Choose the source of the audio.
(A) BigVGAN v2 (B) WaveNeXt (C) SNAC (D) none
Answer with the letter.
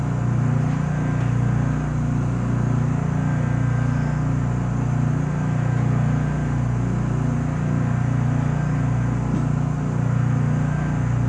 D